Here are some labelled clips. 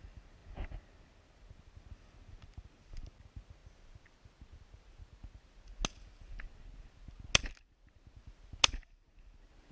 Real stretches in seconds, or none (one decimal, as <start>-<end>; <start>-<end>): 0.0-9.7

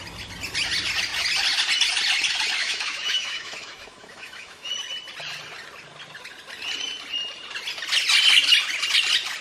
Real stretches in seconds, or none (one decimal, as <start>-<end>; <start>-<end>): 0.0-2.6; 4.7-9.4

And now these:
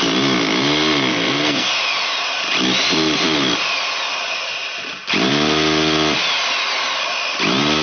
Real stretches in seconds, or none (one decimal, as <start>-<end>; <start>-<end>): 0.0-1.1; 1.7-7.8

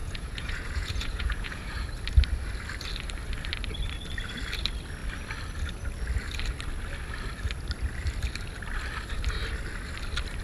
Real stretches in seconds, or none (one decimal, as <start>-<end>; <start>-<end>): 1.9-10.4

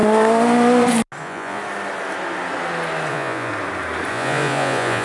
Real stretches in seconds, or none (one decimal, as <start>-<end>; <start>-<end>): 0.0-1.2; 1.6-3.1; 3.5-4.1